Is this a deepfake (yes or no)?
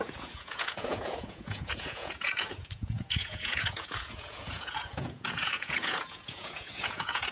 yes